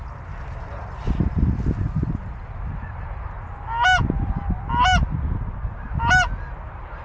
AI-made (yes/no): no